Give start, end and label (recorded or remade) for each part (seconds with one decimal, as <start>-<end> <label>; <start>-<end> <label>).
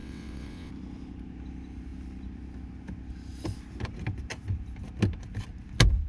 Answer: 0.0-0.7 remade; 0.7-6.1 recorded